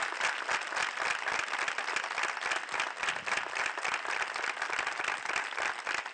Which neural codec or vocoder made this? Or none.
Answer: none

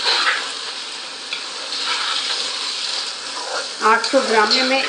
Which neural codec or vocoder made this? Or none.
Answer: none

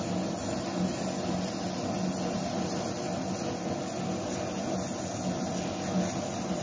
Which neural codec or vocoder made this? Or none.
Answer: none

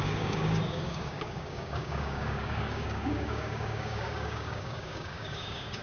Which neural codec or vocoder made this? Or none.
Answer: codec, DAC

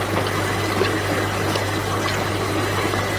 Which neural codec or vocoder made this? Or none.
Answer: none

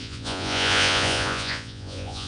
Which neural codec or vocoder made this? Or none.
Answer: vocoder, Vocos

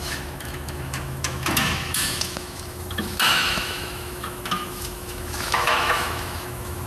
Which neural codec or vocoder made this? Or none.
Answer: autoencoder, DAC-VAE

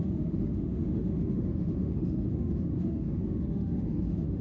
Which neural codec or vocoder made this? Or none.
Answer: autoencoder, DAC-VAE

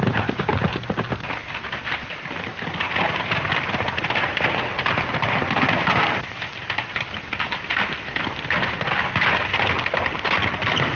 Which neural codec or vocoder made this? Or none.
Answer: none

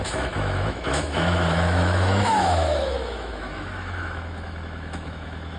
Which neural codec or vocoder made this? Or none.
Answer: autoencoder, DAC-VAE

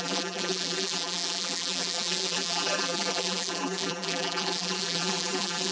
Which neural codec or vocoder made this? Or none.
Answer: vocoder, BigVGAN v2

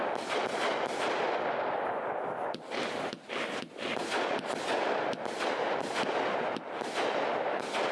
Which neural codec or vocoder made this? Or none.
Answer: none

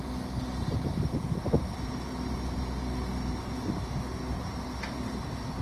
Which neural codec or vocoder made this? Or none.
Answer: none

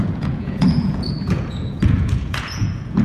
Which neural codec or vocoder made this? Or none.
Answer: vocoder, Vocos